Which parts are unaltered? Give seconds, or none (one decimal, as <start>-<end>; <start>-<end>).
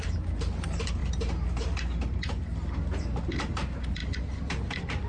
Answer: 0.0-5.1